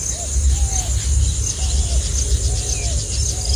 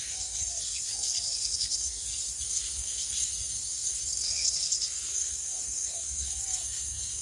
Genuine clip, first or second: first